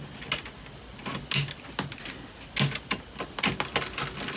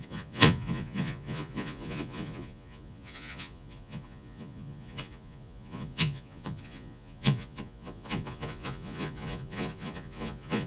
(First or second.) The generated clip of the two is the second